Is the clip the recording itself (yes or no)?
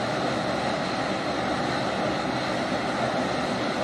yes